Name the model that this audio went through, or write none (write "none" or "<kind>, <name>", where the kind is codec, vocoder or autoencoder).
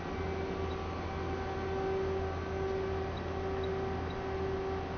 none